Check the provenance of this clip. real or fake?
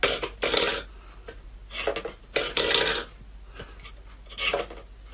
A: real